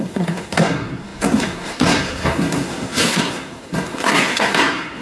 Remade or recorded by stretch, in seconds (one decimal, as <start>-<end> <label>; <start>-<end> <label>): 0.0-5.0 remade